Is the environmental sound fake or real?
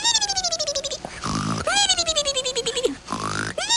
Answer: real